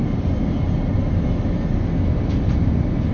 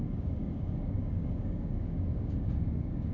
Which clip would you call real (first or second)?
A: first